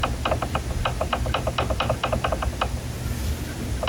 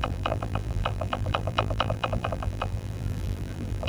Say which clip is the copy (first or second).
second